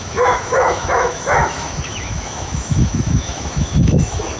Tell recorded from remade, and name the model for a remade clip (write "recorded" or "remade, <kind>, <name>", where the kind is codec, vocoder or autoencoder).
remade, autoencoder, DAC-VAE